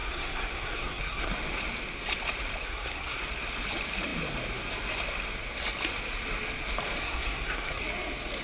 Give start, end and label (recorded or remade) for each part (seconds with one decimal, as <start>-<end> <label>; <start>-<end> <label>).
0.0-1.3 remade; 1.3-2.6 recorded; 2.6-3.2 remade; 3.2-7.0 recorded; 7.0-7.8 remade; 7.8-8.4 recorded